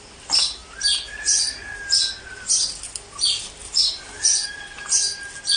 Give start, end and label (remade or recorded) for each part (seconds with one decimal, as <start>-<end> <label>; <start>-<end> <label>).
0.0-5.6 recorded